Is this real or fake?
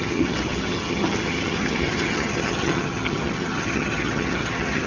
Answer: fake